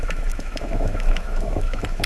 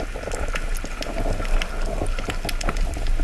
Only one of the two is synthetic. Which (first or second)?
first